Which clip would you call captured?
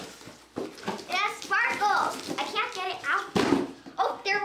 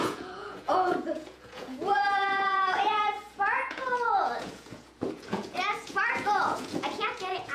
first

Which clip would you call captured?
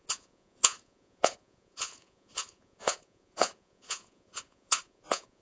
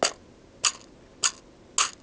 second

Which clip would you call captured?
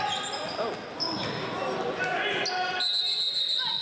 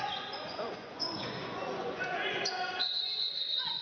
first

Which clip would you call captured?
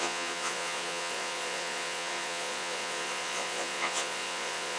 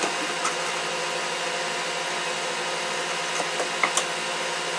second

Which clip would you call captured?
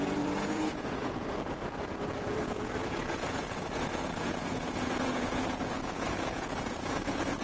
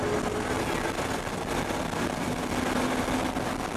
second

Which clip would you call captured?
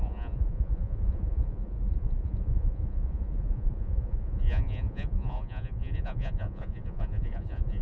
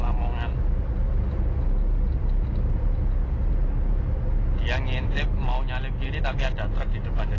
second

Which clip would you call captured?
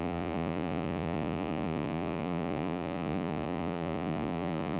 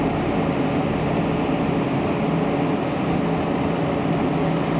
second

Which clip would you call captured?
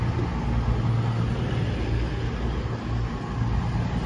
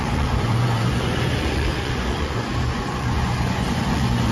first